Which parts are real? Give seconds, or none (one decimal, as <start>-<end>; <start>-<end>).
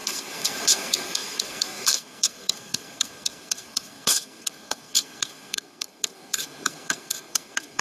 none